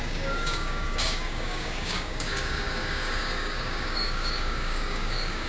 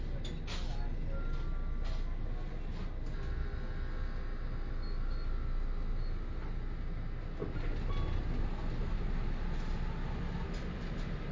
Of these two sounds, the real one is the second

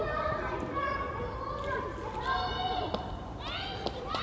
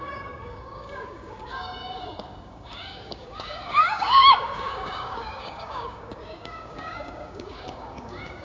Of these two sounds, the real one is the first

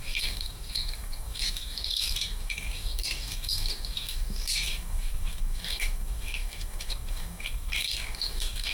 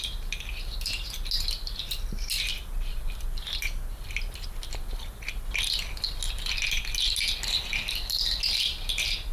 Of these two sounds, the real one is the second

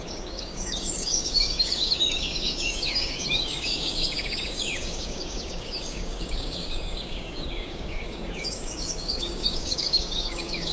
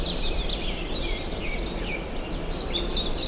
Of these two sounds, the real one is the second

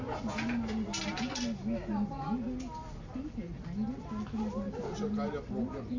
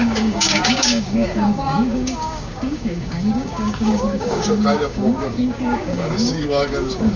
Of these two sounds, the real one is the first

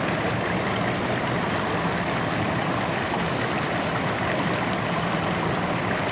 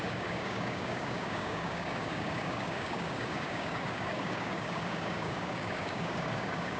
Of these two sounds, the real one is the first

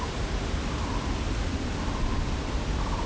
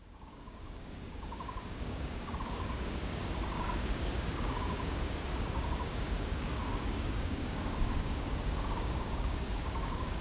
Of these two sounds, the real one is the first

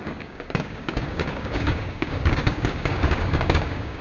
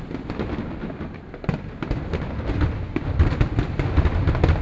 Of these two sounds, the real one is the second